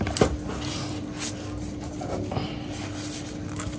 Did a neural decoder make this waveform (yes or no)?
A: no